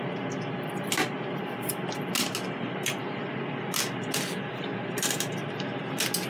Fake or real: real